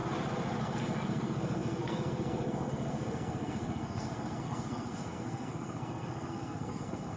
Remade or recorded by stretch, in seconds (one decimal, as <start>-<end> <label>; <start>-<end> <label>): 0.0-0.6 recorded; 0.6-7.2 remade